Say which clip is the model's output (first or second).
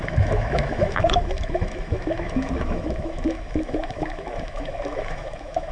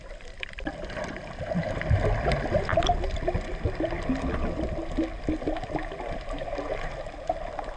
first